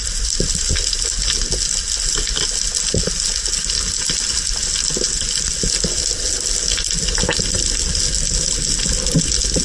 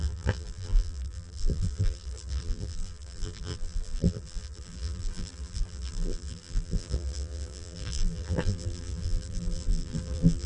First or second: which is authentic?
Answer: first